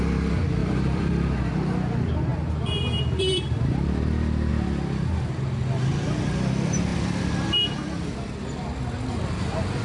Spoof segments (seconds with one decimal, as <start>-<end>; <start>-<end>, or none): 0.6-1.1; 2.3-4.5